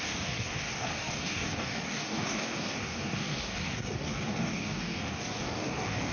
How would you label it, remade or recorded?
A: remade